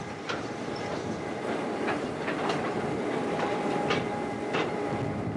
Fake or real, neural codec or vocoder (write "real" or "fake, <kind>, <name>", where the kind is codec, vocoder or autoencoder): fake, vocoder, BigVGAN v2